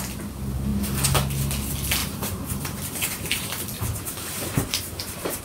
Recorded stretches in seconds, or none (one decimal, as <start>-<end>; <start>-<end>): 0.0-2.0